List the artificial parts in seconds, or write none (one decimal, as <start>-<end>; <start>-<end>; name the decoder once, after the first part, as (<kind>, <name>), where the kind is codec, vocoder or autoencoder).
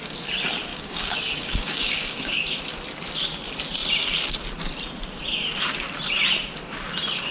0.7-2.6 (codec, DAC)